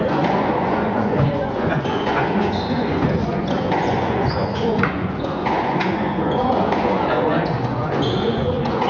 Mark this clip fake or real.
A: fake